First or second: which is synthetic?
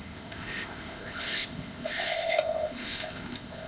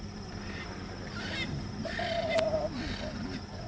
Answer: first